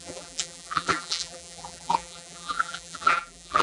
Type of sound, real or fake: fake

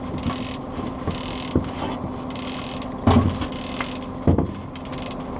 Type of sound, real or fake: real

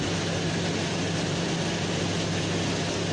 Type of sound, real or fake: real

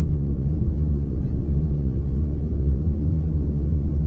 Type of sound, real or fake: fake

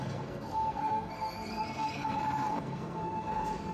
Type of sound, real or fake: fake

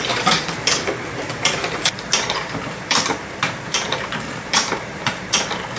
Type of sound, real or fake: fake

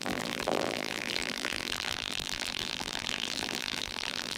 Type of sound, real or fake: fake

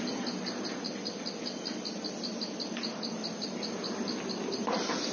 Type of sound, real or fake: real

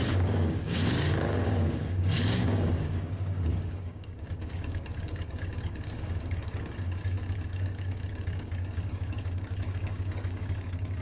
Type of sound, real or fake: fake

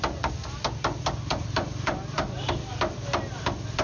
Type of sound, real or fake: real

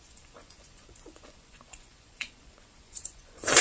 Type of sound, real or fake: fake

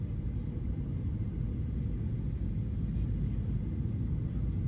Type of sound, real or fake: real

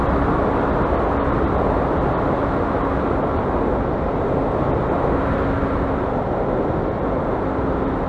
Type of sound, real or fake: real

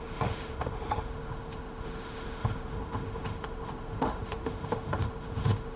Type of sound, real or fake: fake